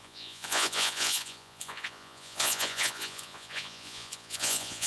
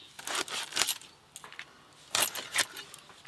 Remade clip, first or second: first